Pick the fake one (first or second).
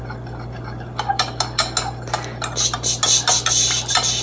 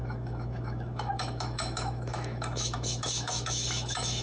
second